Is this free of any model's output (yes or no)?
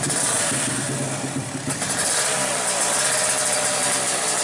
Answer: yes